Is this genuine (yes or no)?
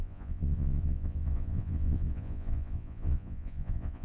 no